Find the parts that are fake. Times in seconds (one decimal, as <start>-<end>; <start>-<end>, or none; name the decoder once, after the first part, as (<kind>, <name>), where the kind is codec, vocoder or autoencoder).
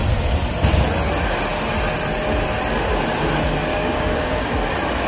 3.7-4.5 (codec, DAC)